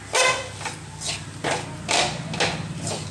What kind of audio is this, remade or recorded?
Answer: recorded